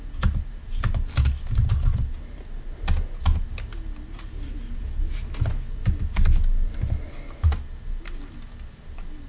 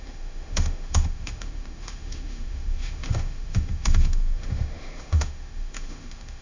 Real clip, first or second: first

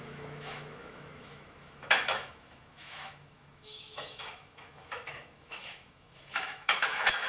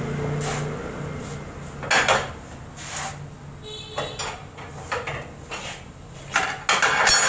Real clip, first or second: second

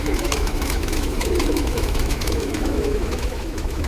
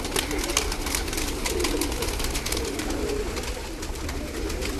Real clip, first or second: second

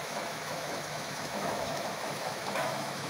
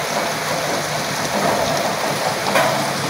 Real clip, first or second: second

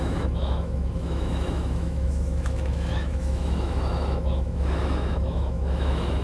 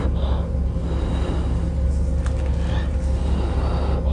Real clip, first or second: second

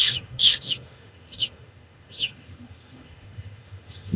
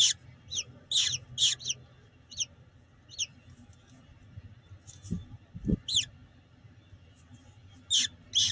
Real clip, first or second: second